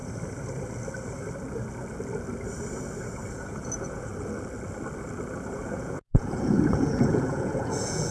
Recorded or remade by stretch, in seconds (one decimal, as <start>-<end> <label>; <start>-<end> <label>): 0.0-3.3 recorded; 3.3-4.1 remade; 4.1-5.5 recorded; 5.5-8.1 remade